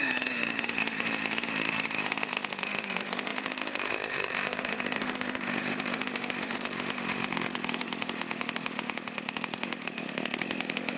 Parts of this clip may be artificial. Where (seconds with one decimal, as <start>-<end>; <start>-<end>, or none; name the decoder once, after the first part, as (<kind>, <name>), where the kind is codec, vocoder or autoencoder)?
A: 0.0-11.0 (autoencoder, DAC-VAE)